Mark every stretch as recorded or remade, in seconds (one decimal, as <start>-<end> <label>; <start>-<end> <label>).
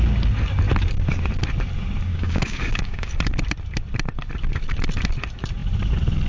0.0-2.1 recorded; 2.1-3.1 remade; 3.1-6.3 recorded